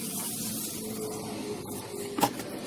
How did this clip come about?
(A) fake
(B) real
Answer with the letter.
B